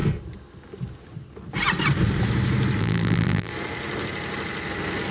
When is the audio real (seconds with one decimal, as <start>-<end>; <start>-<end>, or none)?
0.0-2.8; 3.5-5.1